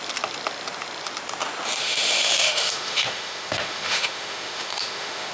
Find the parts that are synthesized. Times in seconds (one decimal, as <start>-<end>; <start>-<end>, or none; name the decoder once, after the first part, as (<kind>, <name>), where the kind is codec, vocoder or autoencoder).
1.8-5.3 (autoencoder, DAC-VAE)